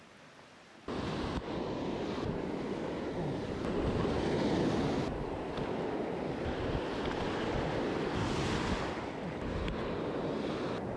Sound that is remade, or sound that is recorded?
recorded